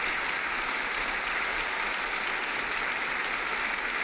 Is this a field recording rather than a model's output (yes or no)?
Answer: yes